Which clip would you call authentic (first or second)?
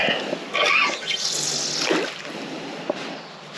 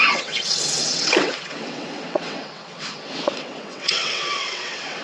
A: first